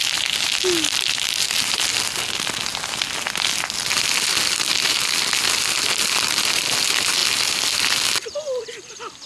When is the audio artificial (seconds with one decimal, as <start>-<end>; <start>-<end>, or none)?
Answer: none